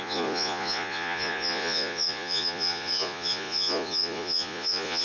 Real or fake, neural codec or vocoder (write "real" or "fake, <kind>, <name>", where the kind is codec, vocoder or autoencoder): fake, vocoder, Vocos